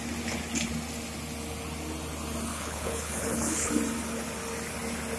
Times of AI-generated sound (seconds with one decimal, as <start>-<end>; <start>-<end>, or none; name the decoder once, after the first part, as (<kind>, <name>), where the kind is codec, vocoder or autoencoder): 2.5-3.7 (codec, HILCodec)